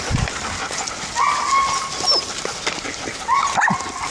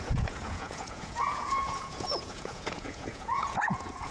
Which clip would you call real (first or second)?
first